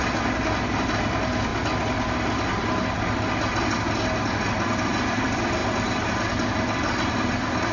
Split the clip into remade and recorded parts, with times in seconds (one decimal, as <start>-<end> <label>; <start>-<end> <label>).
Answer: 0.0-7.7 recorded